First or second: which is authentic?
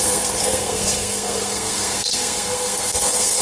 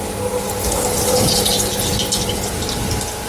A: second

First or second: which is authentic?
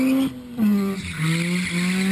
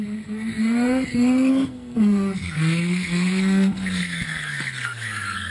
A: first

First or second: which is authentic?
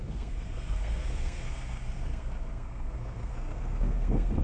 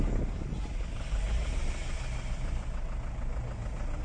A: second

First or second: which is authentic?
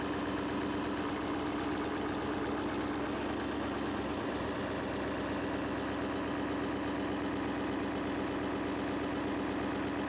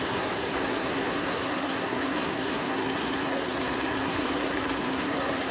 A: first